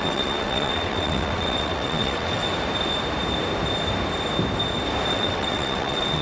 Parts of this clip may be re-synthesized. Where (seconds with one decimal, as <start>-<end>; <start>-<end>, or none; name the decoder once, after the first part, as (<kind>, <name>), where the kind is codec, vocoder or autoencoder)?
0.0-2.4 (vocoder, WaveNeXt); 5.1-6.2